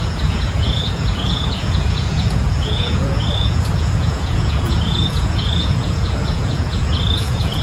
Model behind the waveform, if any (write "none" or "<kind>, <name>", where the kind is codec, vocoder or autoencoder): vocoder, Vocos